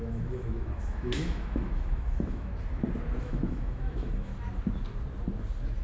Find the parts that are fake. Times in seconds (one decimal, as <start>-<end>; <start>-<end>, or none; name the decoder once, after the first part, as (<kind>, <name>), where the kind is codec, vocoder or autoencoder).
0.0-2.5 (autoencoder, DAC-VAE); 3.2-4.3